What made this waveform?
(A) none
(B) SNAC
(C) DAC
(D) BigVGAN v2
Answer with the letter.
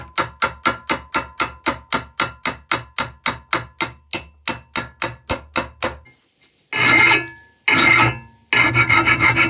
A